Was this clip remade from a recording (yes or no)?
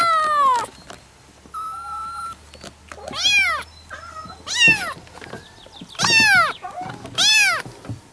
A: no